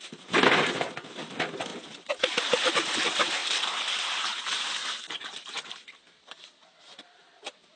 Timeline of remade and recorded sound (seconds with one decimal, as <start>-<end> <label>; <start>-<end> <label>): 0.0-7.8 recorded

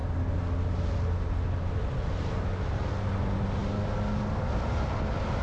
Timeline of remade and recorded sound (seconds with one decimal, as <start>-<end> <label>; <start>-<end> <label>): 0.0-5.4 recorded

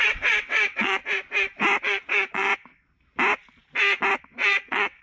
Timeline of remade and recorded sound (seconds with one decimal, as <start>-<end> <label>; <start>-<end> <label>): 0.0-1.0 remade; 1.0-1.8 recorded; 1.8-2.5 remade; 2.5-4.2 recorded; 4.2-5.0 remade

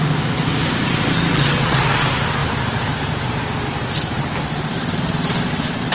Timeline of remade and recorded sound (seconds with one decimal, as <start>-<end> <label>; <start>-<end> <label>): 0.0-1.3 recorded; 1.3-1.8 remade; 1.8-5.9 recorded

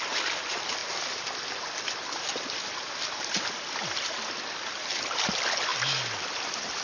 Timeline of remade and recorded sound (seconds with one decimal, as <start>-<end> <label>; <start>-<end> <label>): 0.0-6.8 recorded